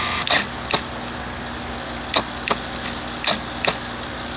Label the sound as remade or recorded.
recorded